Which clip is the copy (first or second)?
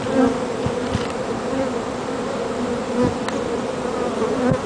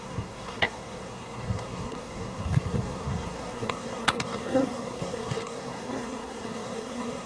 second